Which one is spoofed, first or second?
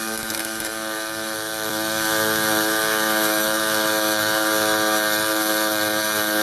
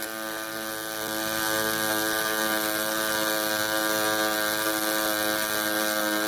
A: first